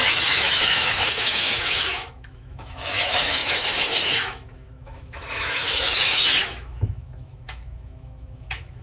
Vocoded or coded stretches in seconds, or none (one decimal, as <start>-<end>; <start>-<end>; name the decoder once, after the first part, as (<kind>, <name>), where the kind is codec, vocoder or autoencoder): 0.0-8.8 (autoencoder, DAC-VAE)